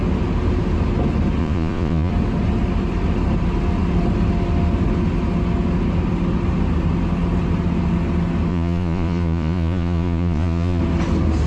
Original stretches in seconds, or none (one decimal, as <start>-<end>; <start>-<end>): 0.0-1.4; 2.1-8.5; 10.8-11.5

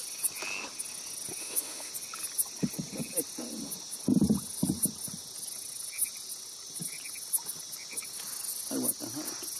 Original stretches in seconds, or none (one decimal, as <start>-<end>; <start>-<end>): 0.0-1.4; 1.9-9.6